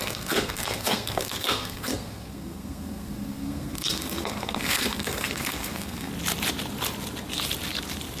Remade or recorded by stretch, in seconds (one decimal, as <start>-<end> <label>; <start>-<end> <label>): 0.0-6.1 remade; 6.1-8.2 recorded